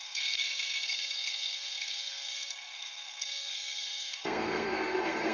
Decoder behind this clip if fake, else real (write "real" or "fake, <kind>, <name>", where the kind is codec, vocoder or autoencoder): fake, codec, SNAC